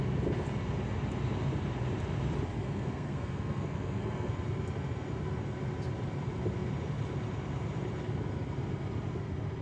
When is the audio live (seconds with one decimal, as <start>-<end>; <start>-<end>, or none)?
0.0-2.6; 4.3-9.6